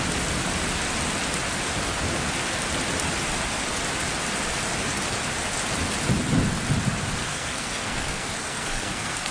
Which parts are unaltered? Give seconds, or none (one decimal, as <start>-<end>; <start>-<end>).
0.0-7.2